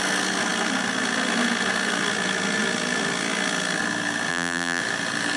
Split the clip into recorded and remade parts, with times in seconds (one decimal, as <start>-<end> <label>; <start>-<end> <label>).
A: 0.0-4.3 recorded; 4.3-4.8 remade; 4.8-5.4 recorded